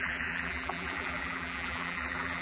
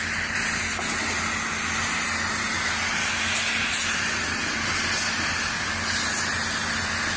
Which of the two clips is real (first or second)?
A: second